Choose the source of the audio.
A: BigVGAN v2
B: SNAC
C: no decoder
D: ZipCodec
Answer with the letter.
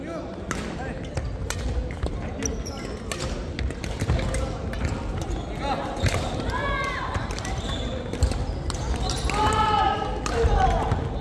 C